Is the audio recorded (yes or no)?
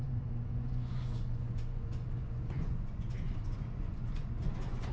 no